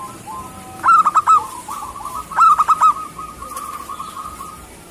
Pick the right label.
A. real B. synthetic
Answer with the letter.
A